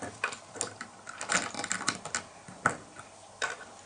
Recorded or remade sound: recorded